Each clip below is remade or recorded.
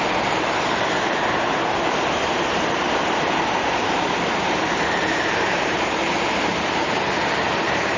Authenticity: remade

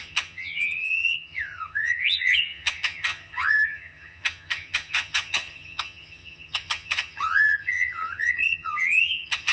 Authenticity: remade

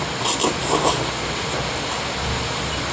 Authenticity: recorded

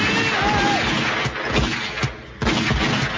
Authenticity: recorded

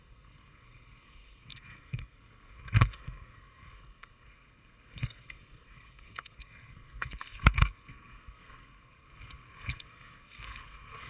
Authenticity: remade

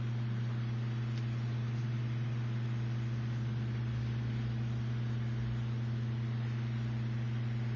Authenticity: recorded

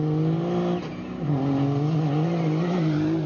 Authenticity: recorded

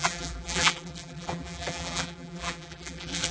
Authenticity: remade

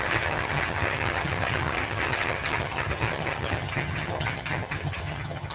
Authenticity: remade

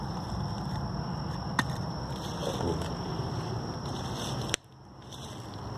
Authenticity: recorded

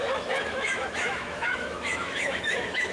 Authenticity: remade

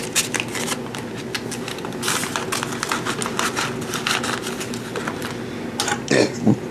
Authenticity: recorded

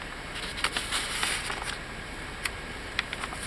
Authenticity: recorded